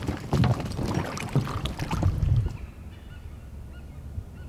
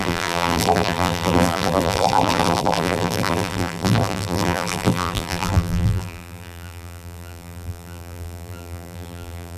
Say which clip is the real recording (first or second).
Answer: first